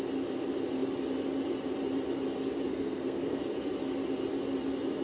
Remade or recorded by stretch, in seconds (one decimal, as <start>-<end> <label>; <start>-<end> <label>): 0.0-2.7 recorded; 2.7-3.4 remade; 3.4-5.0 recorded